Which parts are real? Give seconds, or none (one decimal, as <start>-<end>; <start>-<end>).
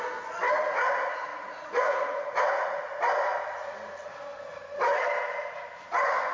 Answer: 0.0-1.3; 2.8-6.3